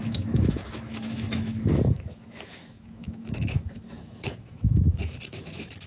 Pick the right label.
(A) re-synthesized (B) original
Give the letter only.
A